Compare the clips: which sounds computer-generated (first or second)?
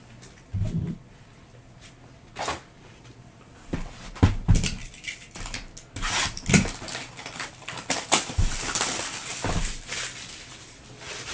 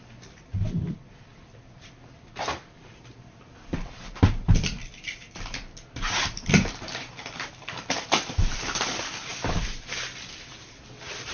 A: second